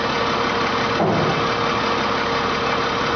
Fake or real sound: real